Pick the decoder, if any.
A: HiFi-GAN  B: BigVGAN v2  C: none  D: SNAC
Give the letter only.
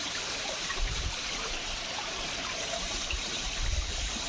B